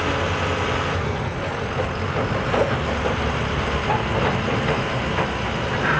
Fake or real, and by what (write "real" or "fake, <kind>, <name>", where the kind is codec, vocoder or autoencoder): real